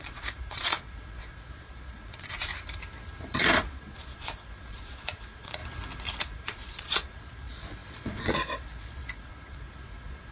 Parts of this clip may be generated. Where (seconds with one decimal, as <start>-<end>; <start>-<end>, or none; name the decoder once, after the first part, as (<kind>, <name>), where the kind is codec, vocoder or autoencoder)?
0.0-2.5 (vocoder, Vocos); 3.4-5.6; 6.2-10.3